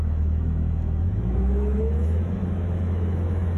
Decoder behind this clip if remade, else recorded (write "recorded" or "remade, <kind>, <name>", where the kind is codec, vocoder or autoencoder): remade, autoencoder, DAC-VAE